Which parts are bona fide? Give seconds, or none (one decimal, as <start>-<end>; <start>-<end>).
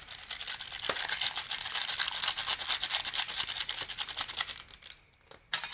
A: 0.0-5.7